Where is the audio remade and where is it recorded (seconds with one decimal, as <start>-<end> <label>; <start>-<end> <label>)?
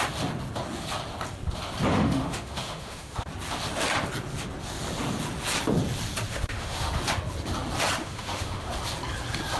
0.0-1.9 recorded; 1.9-3.3 remade; 3.3-6.3 recorded; 6.3-6.9 remade; 6.9-8.0 recorded; 8.0-8.7 remade; 8.7-9.6 recorded